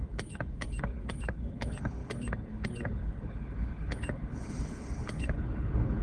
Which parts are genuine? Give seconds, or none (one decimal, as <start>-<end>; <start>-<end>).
none

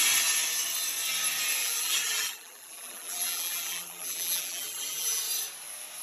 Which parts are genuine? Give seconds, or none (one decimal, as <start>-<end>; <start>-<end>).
0.0-1.6; 5.2-6.0

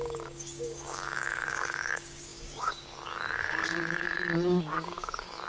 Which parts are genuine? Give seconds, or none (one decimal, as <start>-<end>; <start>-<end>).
none

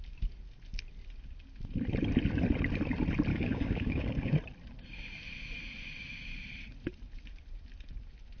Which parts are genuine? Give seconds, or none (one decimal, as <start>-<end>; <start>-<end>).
0.0-3.3; 4.4-8.4

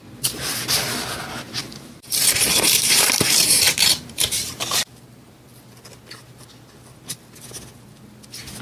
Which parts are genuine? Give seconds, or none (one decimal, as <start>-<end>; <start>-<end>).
0.0-1.6; 4.6-8.6

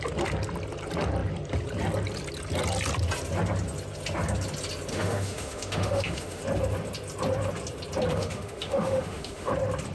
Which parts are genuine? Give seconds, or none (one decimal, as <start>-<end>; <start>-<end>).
0.0-4.9; 6.4-8.1; 9.5-9.9